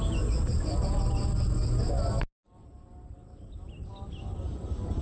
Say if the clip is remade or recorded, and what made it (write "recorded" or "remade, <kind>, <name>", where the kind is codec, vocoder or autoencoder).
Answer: recorded